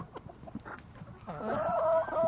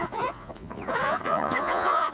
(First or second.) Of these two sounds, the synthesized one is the second